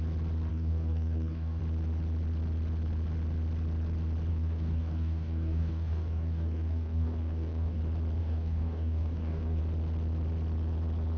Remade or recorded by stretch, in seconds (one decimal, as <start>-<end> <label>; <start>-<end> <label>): 0.0-0.5 recorded; 0.5-1.6 remade; 1.6-4.3 recorded; 4.3-7.8 remade; 7.8-8.2 recorded; 8.2-9.6 remade; 9.6-11.2 recorded

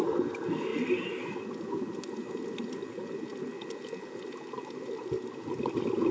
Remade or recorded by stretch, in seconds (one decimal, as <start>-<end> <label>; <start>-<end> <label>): 0.0-6.1 recorded

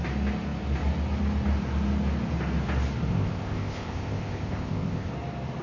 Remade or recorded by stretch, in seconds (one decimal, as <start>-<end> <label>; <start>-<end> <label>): 0.0-3.1 recorded; 3.1-5.1 remade; 5.1-5.6 recorded

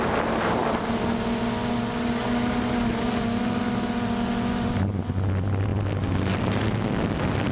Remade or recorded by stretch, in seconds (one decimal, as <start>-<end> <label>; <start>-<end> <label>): 0.0-7.5 recorded

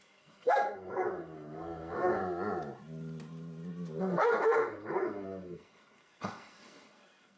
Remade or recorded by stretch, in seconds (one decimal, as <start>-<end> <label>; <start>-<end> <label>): 0.0-2.2 remade; 2.2-4.0 recorded; 4.0-7.4 remade

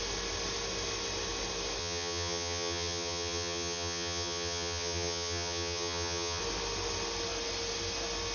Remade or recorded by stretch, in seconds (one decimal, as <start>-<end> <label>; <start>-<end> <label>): 0.0-1.8 recorded; 1.8-6.4 remade; 6.4-8.3 recorded

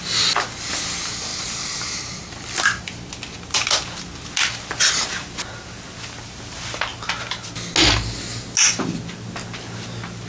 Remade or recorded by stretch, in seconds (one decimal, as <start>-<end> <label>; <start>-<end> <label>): 0.0-1.3 recorded; 1.3-3.1 remade; 3.1-10.3 recorded

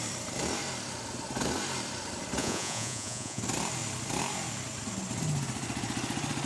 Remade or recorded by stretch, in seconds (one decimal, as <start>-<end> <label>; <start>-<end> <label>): 0.0-2.4 recorded; 2.4-3.4 remade; 3.4-6.5 recorded